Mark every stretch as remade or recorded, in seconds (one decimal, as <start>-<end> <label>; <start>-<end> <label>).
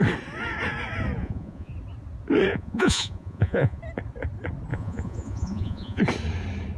0.0-1.2 recorded; 1.2-1.7 remade; 1.7-2.5 recorded; 2.5-3.8 remade; 3.8-4.7 recorded; 4.7-6.0 remade; 6.0-6.8 recorded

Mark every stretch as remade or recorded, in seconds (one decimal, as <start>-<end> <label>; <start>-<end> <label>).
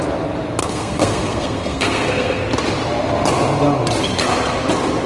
0.0-0.6 recorded; 0.6-2.4 remade; 2.4-5.1 recorded